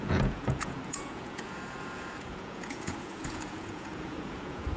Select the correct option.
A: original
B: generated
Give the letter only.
B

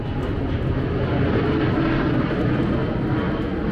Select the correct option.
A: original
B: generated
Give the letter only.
A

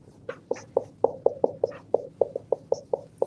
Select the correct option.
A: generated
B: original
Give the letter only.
B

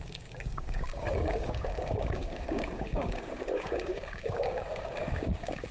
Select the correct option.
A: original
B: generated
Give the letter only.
B